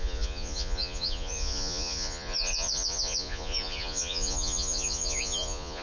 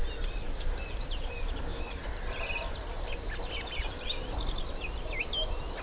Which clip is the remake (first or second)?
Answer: first